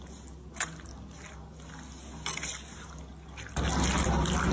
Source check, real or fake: real